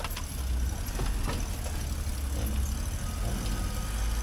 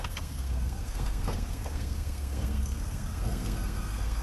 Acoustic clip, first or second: first